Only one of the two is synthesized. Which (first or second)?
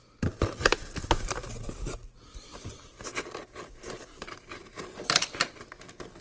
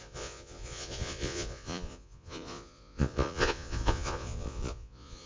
second